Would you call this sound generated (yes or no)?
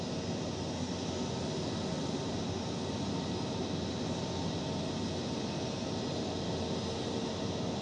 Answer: no